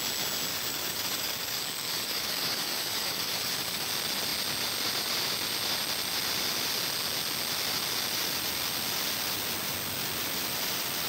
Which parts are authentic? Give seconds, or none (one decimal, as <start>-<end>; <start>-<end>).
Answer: 0.0-0.5; 3.9-11.1